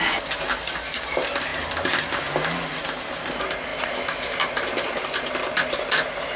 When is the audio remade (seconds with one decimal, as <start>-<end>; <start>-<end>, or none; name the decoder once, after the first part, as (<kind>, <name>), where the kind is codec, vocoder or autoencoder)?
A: 1.5-3.3 (vocoder, BigVGAN v2); 3.7-5.3